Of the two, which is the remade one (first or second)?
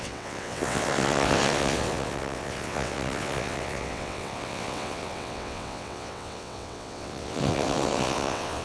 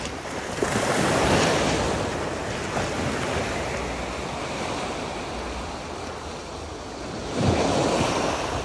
first